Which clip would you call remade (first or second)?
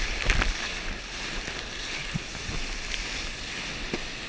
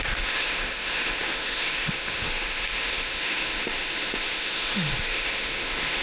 second